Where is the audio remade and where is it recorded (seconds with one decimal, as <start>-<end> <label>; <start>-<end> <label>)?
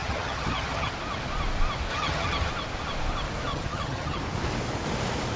0.0-0.9 remade; 0.9-1.9 recorded; 1.9-2.5 remade; 2.5-3.5 recorded; 3.5-4.2 remade; 4.2-5.4 recorded